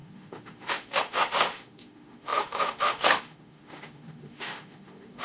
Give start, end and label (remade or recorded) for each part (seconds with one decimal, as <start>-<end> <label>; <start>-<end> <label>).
0.0-5.2 remade